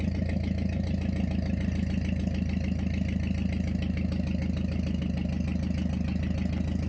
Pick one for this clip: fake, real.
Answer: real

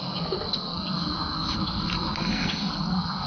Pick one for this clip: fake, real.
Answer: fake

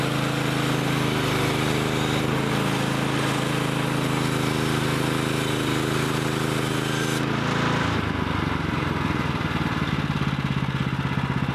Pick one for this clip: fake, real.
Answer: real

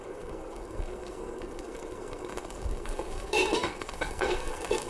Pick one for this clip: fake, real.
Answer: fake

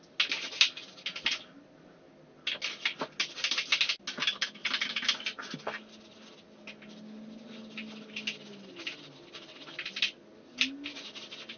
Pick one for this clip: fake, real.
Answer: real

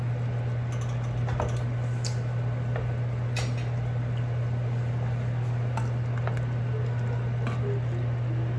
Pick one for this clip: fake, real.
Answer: real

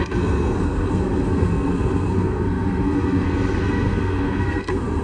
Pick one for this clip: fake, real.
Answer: fake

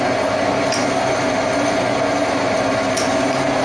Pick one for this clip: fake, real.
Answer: real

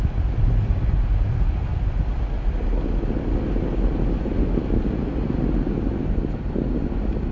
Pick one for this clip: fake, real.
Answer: real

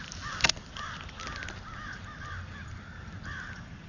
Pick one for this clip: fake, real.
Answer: real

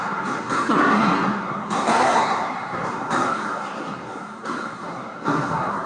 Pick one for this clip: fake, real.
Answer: fake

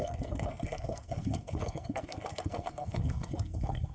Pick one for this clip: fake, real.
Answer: fake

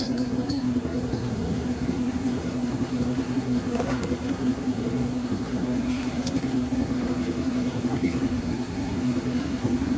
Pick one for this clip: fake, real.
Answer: fake